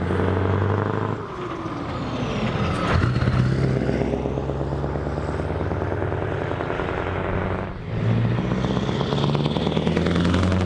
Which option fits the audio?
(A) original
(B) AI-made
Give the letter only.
A